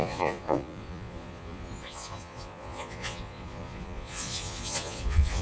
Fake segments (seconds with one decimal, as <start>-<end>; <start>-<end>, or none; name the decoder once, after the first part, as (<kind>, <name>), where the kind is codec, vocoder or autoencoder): 0.0-5.4 (vocoder, Vocos)

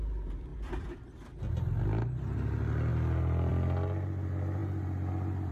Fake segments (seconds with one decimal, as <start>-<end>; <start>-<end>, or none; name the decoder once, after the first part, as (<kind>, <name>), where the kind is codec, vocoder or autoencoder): 0.5-1.4 (vocoder, BigVGAN v2)

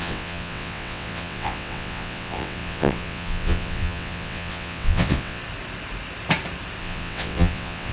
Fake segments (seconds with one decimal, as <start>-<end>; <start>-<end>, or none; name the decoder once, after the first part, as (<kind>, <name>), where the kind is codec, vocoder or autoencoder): 0.0-5.4 (vocoder, WaveNeXt); 6.8-7.9

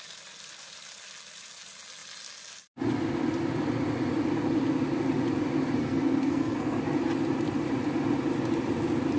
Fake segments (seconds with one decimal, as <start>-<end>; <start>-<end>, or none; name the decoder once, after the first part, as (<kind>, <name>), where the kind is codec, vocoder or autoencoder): 5.8-6.8 (codec, SNAC)